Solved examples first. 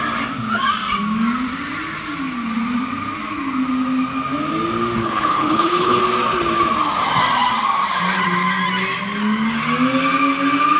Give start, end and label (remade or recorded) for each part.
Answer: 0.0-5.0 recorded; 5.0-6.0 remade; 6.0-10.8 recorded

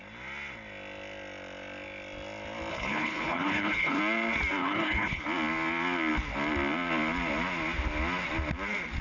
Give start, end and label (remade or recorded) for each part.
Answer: 0.0-2.7 recorded; 2.7-4.0 remade; 4.0-4.6 recorded; 4.6-5.2 remade; 5.2-9.0 recorded

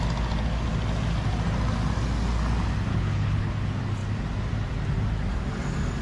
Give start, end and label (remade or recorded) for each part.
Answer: 0.0-2.9 recorded; 2.9-3.5 remade; 3.5-6.0 recorded

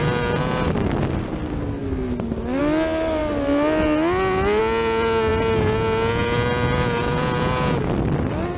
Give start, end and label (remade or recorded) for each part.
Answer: 0.0-8.6 recorded

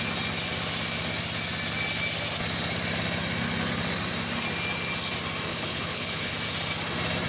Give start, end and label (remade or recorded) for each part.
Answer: 0.0-5.5 recorded; 5.5-6.3 remade; 6.3-7.3 recorded

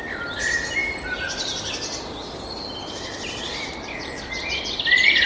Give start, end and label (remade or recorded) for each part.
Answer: 0.0-5.3 recorded

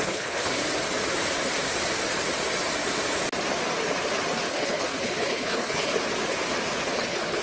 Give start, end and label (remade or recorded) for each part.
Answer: 0.0-0.5 remade; 0.5-4.5 recorded; 4.5-5.9 remade; 5.9-6.9 recorded; 6.9-7.4 remade